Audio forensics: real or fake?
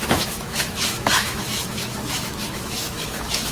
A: fake